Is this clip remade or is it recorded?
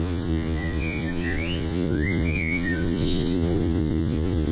remade